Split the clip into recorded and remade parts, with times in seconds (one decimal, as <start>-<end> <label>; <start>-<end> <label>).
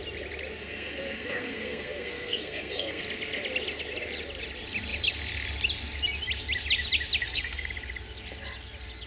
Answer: 0.0-0.6 recorded; 0.6-3.0 remade; 3.0-7.2 recorded; 7.2-7.7 remade; 7.7-9.1 recorded